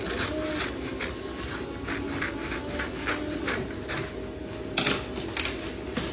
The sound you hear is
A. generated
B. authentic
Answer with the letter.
B